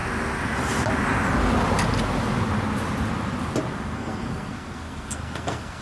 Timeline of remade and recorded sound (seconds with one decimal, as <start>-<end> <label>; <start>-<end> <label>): 0.0-3.7 recorded; 3.7-5.8 remade